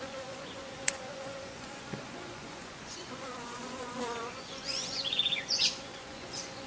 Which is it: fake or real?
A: fake